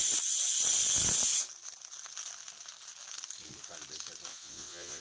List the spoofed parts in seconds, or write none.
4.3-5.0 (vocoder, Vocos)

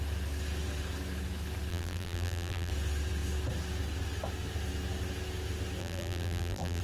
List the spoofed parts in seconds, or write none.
1.7-2.7 (vocoder, BigVGAN v2); 5.8-6.8

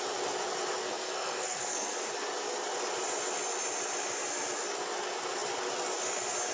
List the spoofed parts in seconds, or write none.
0.8-1.9 (codec, SNAC)

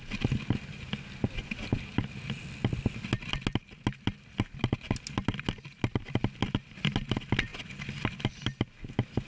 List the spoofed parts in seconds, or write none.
none